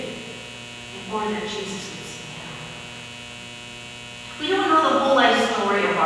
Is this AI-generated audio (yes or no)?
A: no